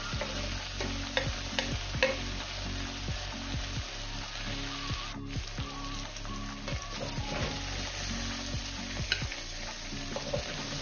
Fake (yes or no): no